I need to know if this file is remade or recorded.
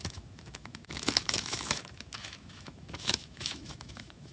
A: remade